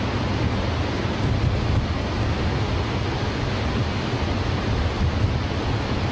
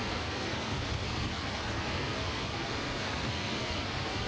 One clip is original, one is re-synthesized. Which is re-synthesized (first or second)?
second